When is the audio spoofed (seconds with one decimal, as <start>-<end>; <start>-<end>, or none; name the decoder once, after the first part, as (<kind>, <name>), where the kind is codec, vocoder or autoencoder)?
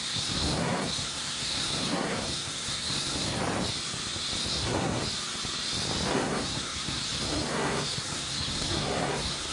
0.0-3.4 (codec, SNAC); 4.5-5.0; 6.1-9.5